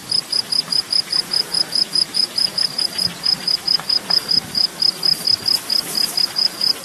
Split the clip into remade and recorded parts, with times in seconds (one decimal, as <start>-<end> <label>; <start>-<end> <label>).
0.0-4.7 remade; 4.7-6.3 recorded; 6.3-6.8 remade